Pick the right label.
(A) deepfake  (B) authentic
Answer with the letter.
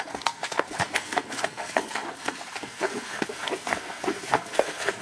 A